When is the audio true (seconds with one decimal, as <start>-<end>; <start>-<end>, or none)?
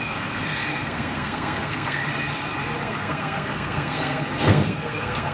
2.0-2.8